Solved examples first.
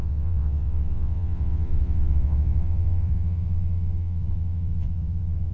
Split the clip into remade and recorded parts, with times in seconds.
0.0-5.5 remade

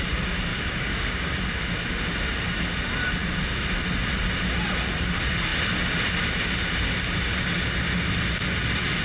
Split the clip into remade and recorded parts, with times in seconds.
0.0-0.5 recorded; 0.5-1.4 remade; 1.4-9.0 recorded

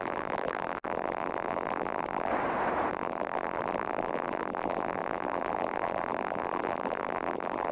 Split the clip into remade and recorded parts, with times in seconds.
0.0-2.3 remade; 2.3-2.9 recorded; 2.9-7.7 remade

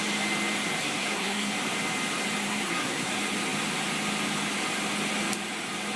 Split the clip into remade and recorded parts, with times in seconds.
0.0-0.8 recorded; 0.8-1.5 remade; 1.5-2.4 recorded; 2.4-3.1 remade; 3.1-6.0 recorded

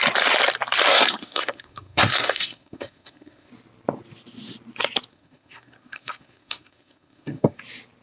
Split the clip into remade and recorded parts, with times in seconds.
0.0-0.9 recorded; 0.9-3.5 remade; 3.5-5.1 recorded; 5.1-7.6 remade; 7.6-8.0 recorded

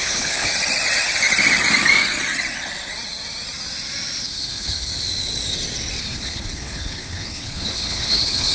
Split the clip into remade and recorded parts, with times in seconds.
0.0-0.5 remade; 0.5-4.2 recorded; 4.2-4.9 remade; 4.9-6.0 recorded; 6.0-8.5 remade

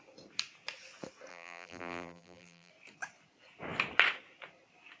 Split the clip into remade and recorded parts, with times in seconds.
0.0-1.3 recorded; 1.3-2.7 remade; 2.7-5.0 recorded